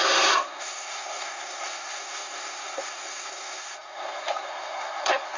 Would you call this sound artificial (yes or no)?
yes